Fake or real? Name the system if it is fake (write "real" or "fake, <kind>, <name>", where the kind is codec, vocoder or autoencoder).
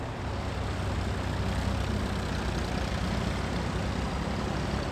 real